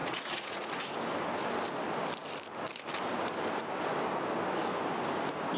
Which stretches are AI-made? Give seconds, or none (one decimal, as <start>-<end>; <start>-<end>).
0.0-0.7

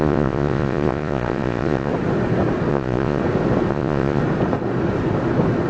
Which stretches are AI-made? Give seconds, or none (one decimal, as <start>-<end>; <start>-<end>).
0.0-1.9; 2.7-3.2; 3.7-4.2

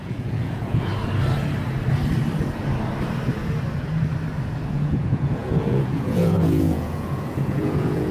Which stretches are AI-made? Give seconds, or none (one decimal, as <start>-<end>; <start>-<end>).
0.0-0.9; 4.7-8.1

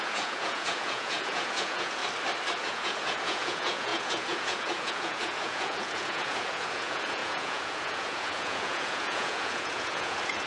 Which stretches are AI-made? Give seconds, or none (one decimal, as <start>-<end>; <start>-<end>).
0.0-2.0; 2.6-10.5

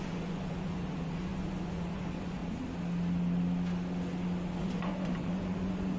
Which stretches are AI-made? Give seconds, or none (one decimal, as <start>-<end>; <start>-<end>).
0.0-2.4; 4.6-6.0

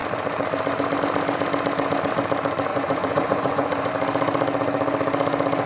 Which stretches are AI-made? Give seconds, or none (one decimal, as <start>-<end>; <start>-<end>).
2.7-3.9